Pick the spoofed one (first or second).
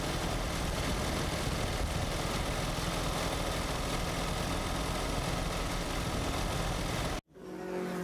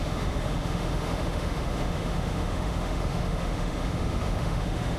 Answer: second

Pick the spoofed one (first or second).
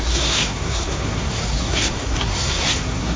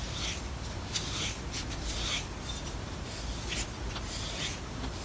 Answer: first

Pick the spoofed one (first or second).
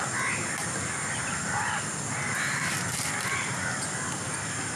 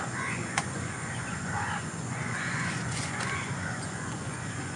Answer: second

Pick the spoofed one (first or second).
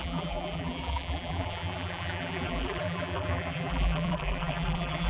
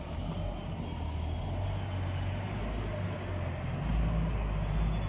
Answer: first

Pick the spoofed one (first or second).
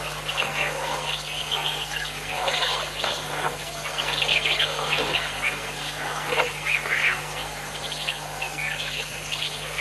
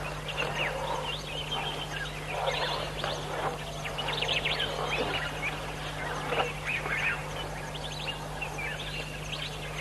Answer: first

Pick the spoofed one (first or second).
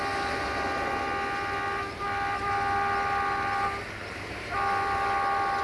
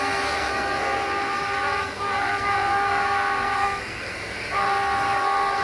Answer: second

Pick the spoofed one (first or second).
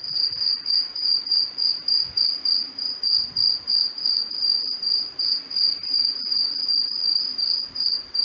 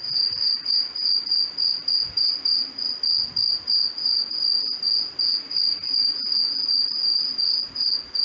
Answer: first